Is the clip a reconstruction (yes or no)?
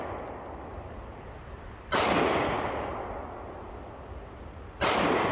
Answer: no